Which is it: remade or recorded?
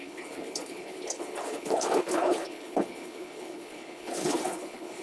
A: remade